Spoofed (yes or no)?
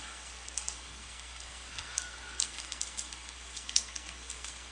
yes